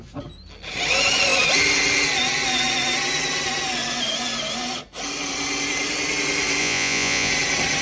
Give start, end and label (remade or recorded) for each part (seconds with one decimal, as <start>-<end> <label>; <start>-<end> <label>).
0.0-6.6 recorded; 6.6-7.3 remade; 7.3-7.8 recorded